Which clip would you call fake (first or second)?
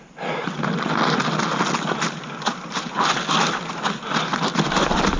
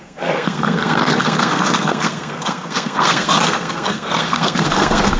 second